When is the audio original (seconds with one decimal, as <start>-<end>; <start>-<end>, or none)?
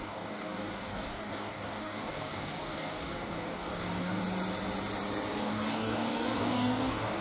4.2-5.4